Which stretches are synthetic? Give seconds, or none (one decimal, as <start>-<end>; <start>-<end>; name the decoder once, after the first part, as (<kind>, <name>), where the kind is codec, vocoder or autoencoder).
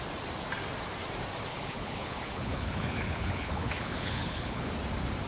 1.5-4.7 (codec, HILCodec)